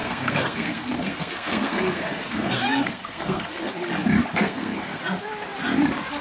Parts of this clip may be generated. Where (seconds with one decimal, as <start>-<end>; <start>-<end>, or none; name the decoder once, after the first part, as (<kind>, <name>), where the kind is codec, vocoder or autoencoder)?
0.0-3.7 (codec, SNAC); 4.3-5.0